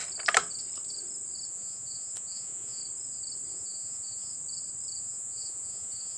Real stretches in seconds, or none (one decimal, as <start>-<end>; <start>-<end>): 0.0-1.5; 2.8-3.5; 4.3-5.0